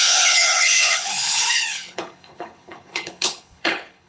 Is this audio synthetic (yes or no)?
yes